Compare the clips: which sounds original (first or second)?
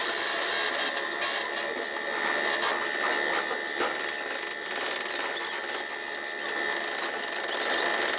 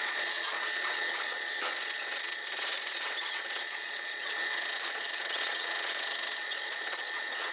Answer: first